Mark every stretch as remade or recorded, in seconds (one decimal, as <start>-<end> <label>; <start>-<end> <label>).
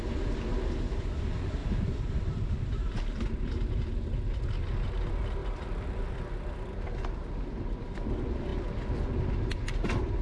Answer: 0.0-1.6 recorded; 1.6-3.8 remade; 3.8-5.4 recorded; 5.4-6.1 remade; 6.1-10.2 recorded